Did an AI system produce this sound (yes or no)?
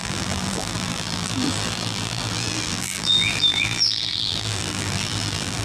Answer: yes